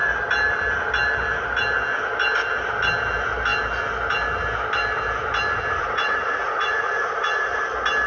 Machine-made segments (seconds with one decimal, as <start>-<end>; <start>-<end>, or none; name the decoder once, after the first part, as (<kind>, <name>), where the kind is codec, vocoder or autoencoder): 5.8-7.6 (vocoder, Vocos)